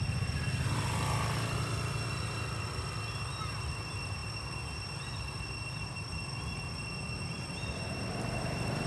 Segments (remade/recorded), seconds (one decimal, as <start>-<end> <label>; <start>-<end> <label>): 0.0-8.9 recorded